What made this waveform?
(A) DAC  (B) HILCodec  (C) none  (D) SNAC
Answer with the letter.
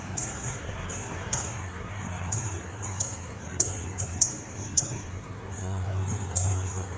D